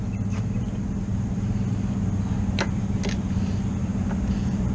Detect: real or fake real